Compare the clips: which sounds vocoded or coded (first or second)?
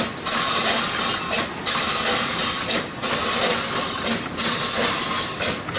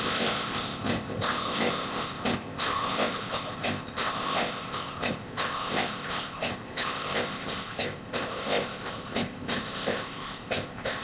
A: second